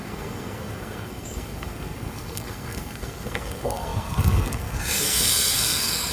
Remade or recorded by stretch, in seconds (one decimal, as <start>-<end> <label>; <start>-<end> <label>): 0.0-6.1 remade